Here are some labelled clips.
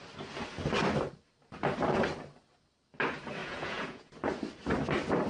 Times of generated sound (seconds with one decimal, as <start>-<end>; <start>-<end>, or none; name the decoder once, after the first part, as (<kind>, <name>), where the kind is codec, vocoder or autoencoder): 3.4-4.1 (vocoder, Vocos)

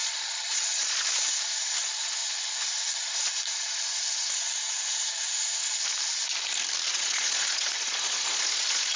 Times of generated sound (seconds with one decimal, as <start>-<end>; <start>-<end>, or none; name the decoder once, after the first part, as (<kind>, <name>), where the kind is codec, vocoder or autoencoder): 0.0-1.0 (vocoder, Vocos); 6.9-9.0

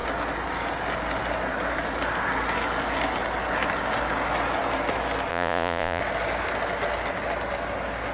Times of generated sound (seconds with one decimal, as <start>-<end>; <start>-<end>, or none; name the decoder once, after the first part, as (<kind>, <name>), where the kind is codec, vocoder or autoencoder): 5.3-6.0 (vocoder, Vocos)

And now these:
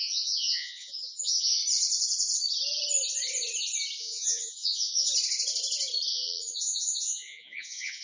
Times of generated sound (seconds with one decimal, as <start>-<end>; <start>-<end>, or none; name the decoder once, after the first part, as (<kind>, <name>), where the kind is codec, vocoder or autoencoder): 0.0-1.6 (vocoder, Vocos); 4.0-5.1; 6.1-8.0